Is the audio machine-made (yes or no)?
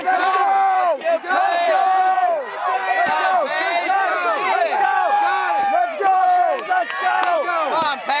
yes